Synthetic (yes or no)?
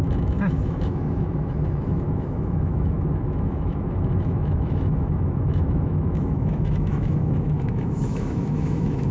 yes